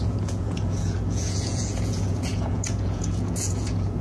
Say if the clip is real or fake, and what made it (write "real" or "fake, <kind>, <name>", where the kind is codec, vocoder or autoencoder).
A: fake, vocoder, Vocos